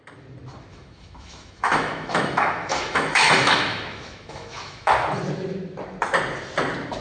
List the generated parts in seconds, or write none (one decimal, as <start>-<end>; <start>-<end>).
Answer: 0.7-4.9